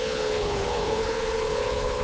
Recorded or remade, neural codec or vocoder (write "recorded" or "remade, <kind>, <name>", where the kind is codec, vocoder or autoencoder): remade, codec, HILCodec